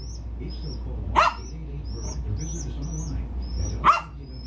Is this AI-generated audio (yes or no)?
no